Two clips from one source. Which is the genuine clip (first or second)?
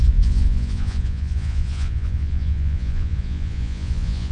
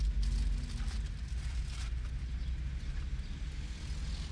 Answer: second